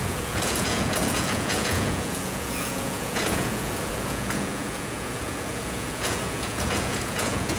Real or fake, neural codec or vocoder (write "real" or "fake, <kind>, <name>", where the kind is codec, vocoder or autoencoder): fake, vocoder, Vocos